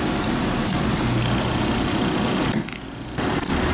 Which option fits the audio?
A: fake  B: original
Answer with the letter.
B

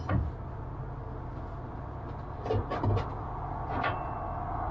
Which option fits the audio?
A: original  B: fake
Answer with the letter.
A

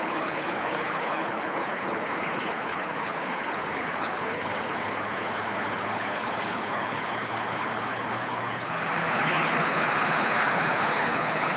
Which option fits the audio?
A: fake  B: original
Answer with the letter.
A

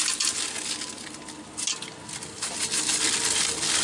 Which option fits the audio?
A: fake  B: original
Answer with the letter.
B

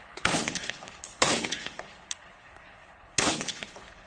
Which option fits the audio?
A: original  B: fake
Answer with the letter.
B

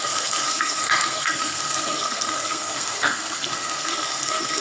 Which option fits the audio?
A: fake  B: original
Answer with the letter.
A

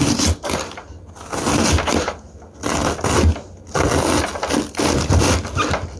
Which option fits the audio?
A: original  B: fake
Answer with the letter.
A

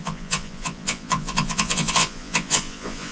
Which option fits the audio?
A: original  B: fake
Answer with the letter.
B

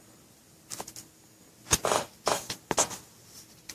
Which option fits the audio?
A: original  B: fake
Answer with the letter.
A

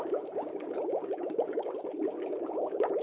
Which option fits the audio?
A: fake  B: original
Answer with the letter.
A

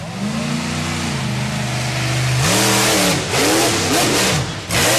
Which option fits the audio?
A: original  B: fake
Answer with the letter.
A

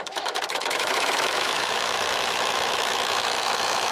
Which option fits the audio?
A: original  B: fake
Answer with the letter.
B